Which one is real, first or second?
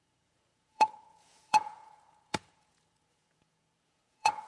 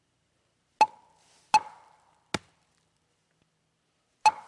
second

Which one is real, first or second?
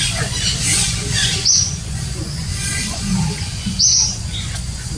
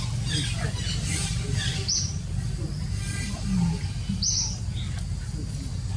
second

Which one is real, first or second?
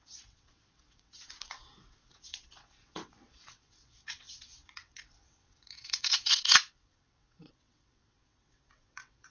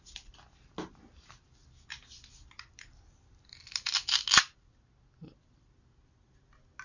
second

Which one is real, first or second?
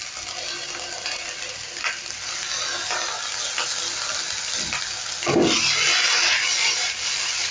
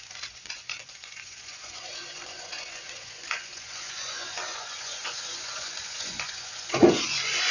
first